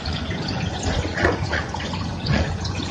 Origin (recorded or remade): remade